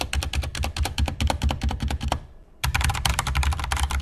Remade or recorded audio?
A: remade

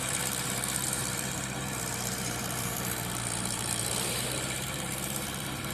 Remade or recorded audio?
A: remade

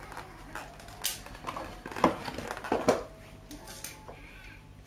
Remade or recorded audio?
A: recorded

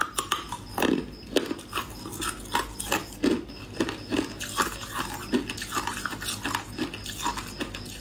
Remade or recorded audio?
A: recorded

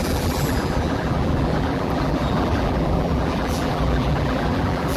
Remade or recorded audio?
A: remade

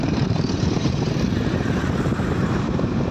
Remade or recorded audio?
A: remade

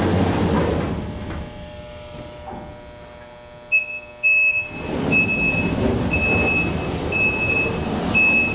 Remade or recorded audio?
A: recorded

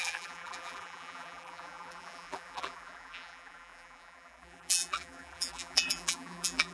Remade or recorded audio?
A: remade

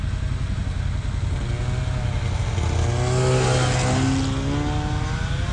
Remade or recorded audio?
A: recorded